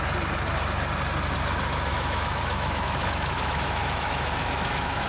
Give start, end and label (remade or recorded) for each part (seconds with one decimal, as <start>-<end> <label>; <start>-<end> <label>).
0.0-1.9 recorded; 1.9-5.1 remade